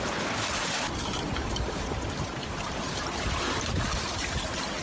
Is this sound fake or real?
real